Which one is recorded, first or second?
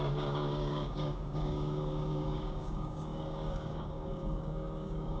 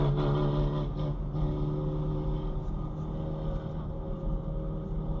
second